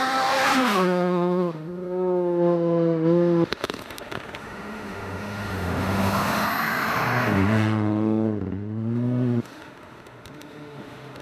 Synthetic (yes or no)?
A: yes